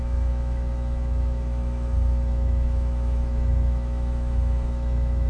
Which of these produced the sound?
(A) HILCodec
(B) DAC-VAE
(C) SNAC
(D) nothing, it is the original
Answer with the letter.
B